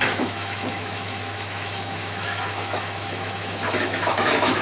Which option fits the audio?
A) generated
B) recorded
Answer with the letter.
A